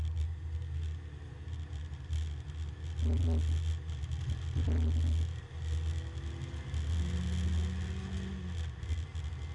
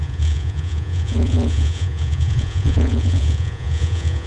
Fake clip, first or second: second